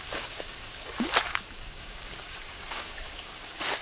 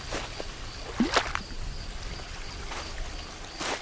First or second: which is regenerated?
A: first